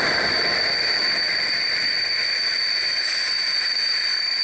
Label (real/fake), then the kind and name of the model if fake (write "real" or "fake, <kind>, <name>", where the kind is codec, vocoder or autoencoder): real